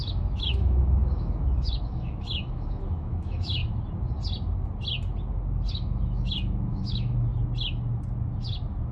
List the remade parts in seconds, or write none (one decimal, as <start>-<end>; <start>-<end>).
0.0-3.6; 5.7-7.3